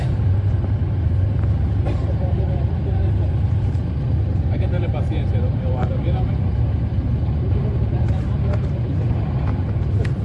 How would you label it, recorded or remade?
remade